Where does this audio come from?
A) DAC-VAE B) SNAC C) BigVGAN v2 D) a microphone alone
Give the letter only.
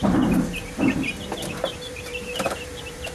C